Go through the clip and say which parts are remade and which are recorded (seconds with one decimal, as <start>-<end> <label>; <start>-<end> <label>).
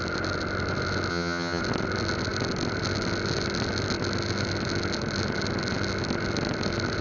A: 0.0-1.1 recorded; 1.1-1.6 remade; 1.6-7.0 recorded